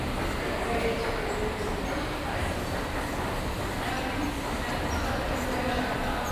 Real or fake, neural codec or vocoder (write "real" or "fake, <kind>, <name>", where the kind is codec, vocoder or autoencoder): real